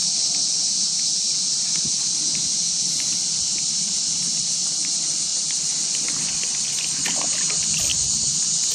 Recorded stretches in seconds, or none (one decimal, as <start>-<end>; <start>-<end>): 0.0-2.8